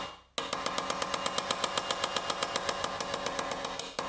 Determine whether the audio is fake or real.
real